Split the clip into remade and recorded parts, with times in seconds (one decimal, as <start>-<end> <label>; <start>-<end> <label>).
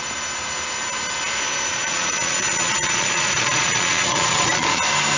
0.0-1.7 recorded; 1.7-4.8 remade; 4.8-5.2 recorded